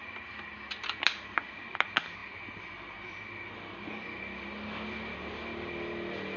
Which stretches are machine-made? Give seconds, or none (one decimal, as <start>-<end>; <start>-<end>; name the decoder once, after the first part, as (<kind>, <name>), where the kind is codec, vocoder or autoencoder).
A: 0.0-1.4 (vocoder, BigVGAN v2)

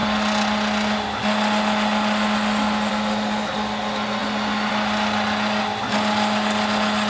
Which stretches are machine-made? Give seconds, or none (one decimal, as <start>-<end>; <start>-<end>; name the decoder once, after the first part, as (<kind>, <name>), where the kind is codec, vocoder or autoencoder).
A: none

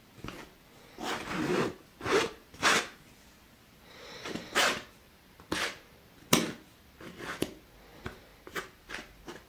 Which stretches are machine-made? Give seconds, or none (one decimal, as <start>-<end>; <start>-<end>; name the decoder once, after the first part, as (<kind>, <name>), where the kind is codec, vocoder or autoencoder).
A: 1.5-6.0 (vocoder, BigVGAN v2); 8.3-9.5

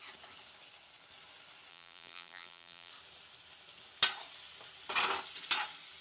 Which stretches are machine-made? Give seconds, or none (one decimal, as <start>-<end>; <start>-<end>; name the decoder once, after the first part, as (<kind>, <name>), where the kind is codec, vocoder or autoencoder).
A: 1.7-2.9 (vocoder, BigVGAN v2)

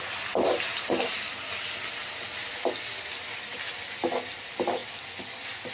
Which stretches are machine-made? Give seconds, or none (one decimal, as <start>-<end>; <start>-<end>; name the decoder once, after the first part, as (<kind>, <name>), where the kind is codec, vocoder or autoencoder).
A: none

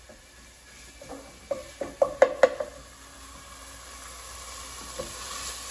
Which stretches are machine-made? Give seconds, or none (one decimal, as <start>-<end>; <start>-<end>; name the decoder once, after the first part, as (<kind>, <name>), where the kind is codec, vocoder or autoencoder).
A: none

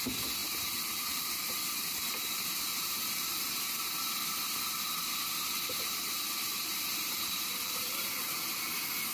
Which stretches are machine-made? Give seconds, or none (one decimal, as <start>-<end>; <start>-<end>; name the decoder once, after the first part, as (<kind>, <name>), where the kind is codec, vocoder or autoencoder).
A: 0.4-3.9 (vocoder, BigVGAN v2); 6.5-8.7